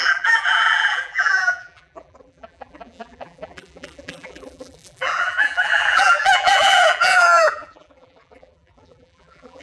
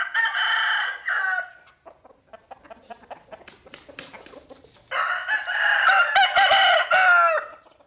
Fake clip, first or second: first